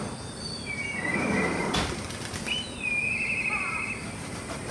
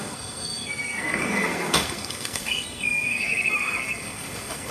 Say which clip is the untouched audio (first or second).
first